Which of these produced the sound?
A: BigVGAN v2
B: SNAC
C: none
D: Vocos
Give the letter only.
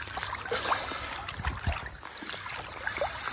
C